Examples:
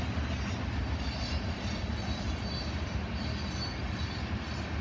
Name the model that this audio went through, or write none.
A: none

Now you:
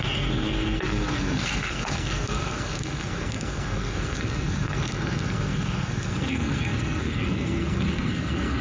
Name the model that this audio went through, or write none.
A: codec, SNAC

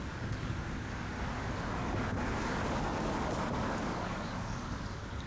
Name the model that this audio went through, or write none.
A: codec, DAC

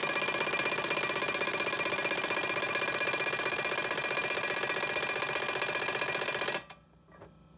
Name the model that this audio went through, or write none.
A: none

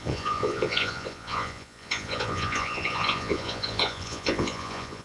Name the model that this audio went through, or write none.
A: vocoder, Vocos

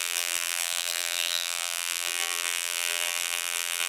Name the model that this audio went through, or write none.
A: vocoder, BigVGAN v2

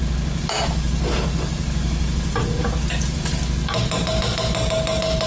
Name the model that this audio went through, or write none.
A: none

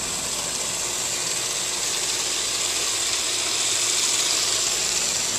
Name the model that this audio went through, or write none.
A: none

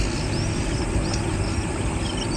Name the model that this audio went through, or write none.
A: none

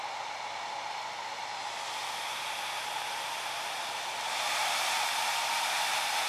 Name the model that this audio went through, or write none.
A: none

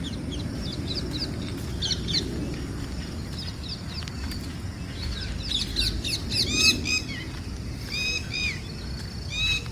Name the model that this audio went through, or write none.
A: none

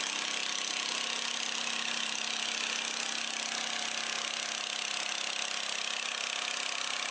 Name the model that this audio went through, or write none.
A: none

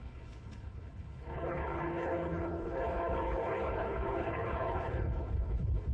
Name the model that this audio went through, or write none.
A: codec, HILCodec